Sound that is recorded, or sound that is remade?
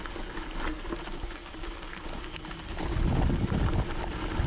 recorded